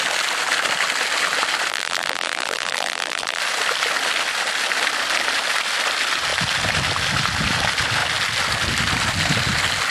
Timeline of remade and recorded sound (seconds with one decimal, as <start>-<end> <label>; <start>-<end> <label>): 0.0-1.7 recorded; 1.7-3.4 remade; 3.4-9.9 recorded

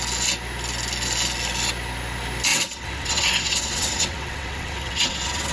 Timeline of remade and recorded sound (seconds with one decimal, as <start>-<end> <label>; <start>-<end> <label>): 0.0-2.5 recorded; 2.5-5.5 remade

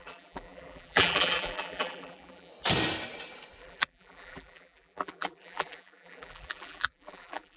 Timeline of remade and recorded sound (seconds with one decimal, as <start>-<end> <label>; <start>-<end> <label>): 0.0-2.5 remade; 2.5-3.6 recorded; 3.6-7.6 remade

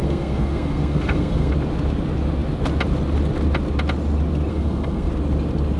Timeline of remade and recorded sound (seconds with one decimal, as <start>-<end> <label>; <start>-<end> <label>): 0.0-1.5 remade; 1.5-4.5 recorded; 4.5-5.1 remade; 5.1-5.8 recorded

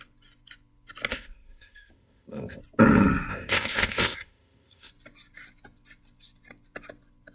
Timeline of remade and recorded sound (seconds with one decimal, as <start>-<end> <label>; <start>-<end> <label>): 0.0-1.1 recorded; 1.1-2.6 remade; 2.6-3.3 recorded; 3.3-4.9 remade; 4.9-7.3 recorded

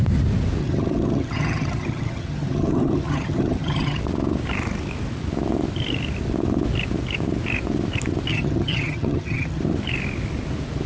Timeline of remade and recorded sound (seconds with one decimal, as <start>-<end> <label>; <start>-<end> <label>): 0.0-0.6 recorded; 0.6-4.0 remade; 4.0-8.3 recorded; 8.3-9.6 remade; 9.6-10.9 recorded